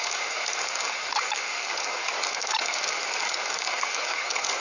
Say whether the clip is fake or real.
fake